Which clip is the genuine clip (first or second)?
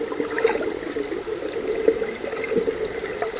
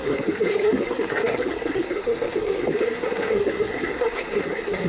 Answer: first